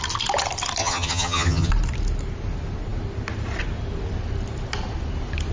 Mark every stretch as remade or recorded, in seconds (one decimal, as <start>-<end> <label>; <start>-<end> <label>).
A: 0.0-0.8 recorded; 0.8-1.7 remade; 1.7-5.5 recorded